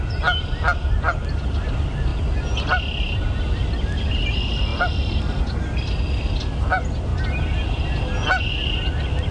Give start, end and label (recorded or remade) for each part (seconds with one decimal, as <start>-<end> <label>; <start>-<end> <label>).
0.0-9.3 recorded